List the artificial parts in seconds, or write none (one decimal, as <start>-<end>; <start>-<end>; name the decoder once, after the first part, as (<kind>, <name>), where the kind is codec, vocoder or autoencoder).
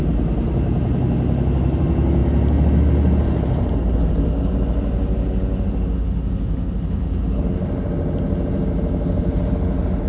0.0-1.0 (vocoder, BigVGAN v2)